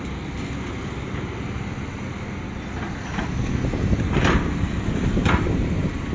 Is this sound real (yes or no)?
yes